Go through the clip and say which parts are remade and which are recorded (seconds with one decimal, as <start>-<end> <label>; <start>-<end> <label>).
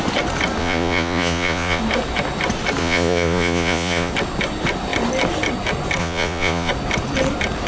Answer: 0.0-0.6 recorded; 0.6-1.8 remade; 1.8-2.8 recorded; 2.8-4.1 remade; 4.1-6.0 recorded; 6.0-6.7 remade; 6.7-7.7 recorded